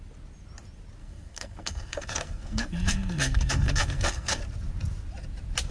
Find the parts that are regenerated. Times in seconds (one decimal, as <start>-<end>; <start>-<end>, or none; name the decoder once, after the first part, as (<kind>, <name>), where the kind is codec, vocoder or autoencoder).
1.0-4.4 (codec, SNAC)